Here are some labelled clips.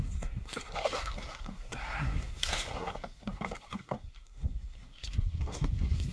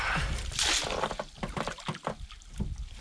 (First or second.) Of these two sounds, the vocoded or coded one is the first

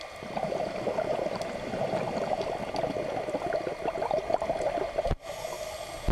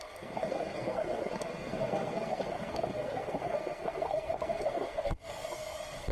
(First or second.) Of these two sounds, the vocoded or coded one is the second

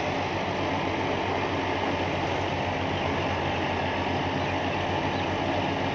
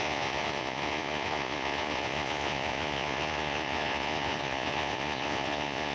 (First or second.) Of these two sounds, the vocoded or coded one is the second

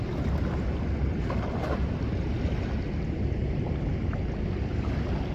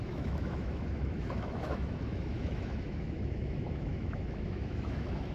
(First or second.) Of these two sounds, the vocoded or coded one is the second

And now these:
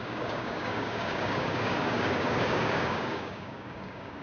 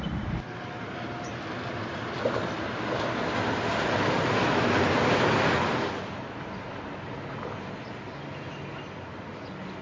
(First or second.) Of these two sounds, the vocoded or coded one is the first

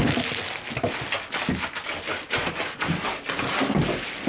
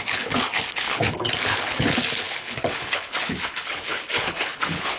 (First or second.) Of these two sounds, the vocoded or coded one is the second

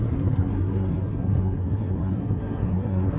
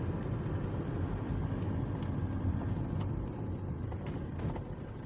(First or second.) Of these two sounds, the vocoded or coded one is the first